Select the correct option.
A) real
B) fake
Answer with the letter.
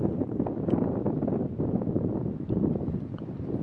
A